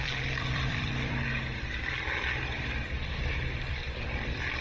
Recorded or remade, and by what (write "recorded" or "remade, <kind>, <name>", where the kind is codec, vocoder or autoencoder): remade, vocoder, BigVGAN v2